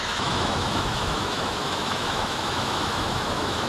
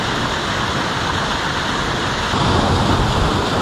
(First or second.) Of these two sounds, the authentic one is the second